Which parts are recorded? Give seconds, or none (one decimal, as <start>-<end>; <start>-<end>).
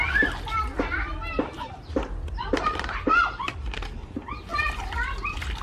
0.0-0.7; 4.1-4.5